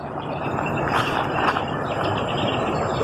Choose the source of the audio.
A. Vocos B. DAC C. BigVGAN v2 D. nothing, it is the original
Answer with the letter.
C